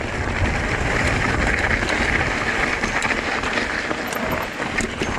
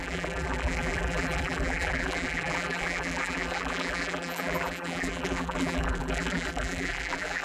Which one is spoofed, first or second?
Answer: second